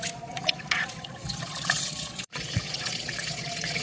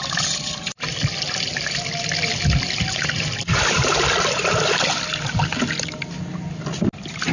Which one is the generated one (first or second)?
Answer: first